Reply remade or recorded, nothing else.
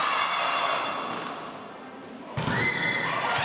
recorded